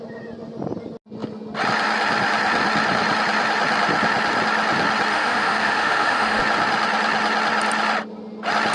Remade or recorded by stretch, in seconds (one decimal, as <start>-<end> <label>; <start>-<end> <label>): 0.0-5.1 recorded; 5.1-6.4 remade; 6.4-8.7 recorded